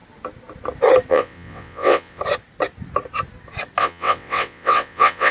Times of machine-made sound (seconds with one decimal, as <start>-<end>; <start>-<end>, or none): 1.1-2.2; 3.8-5.3